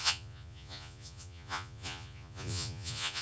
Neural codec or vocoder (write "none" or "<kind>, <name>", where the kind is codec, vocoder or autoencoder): vocoder, Vocos